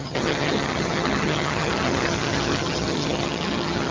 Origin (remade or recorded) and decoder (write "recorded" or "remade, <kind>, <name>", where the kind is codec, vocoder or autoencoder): remade, vocoder, HiFi-GAN